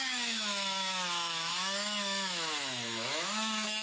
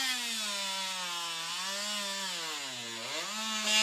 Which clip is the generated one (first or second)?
first